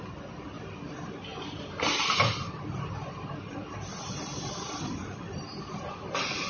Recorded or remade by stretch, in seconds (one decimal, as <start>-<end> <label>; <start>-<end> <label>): 0.0-1.3 recorded; 1.3-5.2 remade; 5.2-6.5 recorded